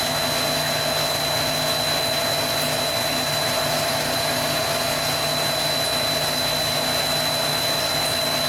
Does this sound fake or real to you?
real